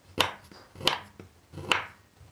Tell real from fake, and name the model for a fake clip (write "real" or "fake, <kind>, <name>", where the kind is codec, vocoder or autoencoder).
real